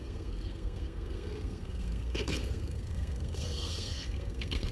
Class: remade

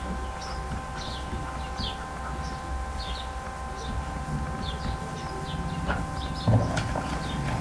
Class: recorded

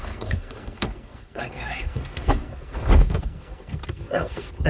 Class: remade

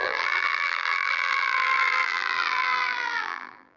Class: remade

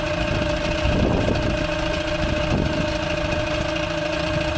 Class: recorded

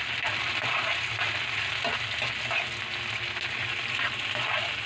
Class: recorded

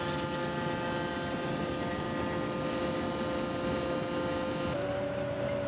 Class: recorded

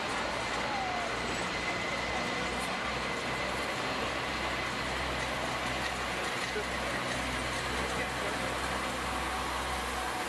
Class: recorded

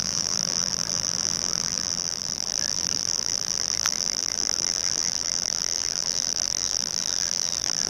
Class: remade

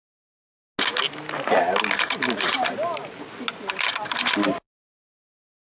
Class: recorded